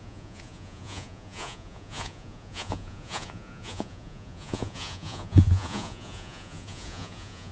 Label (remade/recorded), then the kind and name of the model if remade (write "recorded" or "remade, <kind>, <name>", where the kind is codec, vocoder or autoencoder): remade, vocoder, Vocos